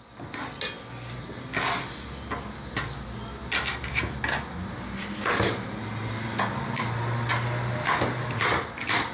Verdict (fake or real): real